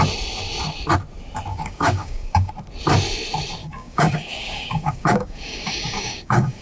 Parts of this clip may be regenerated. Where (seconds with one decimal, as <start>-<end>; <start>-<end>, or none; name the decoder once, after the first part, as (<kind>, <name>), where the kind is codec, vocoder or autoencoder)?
1.5-2.5 (codec, DAC); 3.6-6.6